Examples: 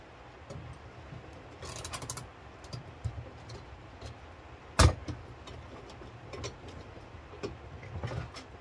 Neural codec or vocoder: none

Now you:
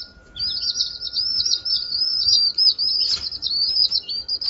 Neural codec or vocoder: none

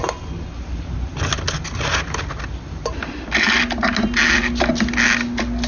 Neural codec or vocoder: none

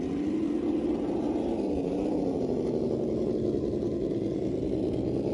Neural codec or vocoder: none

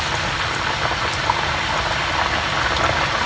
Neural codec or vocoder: none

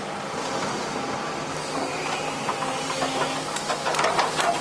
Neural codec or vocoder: none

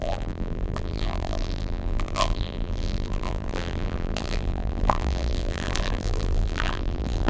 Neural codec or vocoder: vocoder, BigVGAN v2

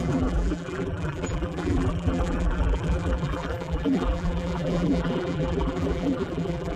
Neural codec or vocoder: vocoder, BigVGAN v2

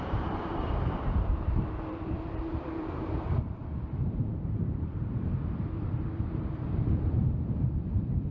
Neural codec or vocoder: vocoder, BigVGAN v2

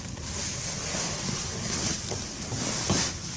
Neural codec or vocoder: none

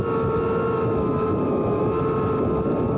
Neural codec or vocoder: none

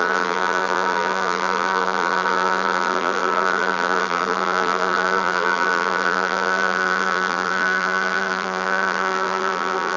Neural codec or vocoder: vocoder, BigVGAN v2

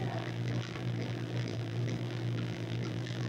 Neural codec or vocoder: vocoder, BigVGAN v2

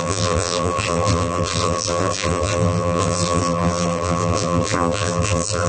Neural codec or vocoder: vocoder, BigVGAN v2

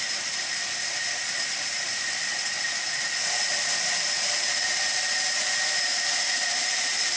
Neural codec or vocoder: none